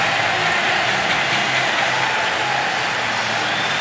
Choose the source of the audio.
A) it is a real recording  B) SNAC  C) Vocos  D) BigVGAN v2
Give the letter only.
A